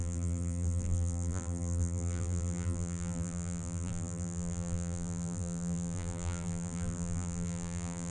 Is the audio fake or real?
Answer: fake